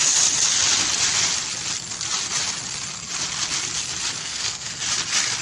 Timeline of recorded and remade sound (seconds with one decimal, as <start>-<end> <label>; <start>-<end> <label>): 0.0-4.2 recorded; 4.2-4.7 remade; 4.7-5.4 recorded